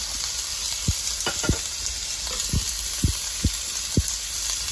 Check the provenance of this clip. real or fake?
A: real